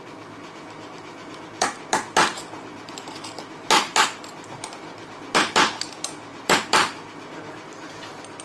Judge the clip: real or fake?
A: fake